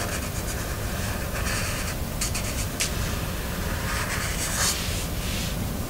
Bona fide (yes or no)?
yes